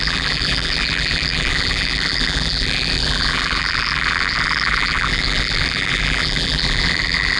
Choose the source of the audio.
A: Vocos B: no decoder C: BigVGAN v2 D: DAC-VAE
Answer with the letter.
C